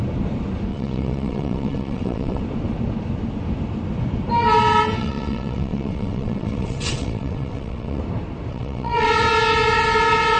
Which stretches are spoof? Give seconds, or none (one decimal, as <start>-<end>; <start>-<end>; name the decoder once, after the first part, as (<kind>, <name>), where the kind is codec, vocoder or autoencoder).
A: 0.7-2.4 (vocoder, WaveNeXt); 5.0-8.0; 8.5-9.1